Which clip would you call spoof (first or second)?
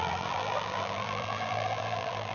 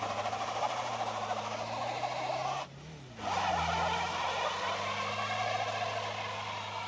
first